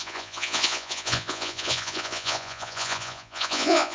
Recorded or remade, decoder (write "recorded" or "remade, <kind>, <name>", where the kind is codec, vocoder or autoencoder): remade, vocoder, Vocos